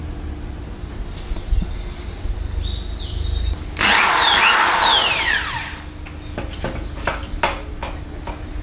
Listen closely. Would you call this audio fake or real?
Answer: real